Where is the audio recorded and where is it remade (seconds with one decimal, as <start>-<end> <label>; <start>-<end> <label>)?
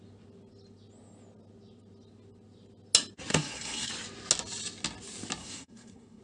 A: 0.0-3.3 recorded; 3.3-3.9 remade; 3.9-5.4 recorded; 5.4-6.2 remade